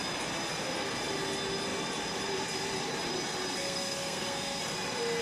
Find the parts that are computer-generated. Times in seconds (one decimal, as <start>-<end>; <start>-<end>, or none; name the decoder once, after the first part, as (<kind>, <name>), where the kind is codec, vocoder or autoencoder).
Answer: 3.6-4.6 (codec, SNAC)